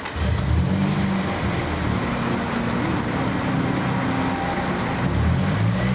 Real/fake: real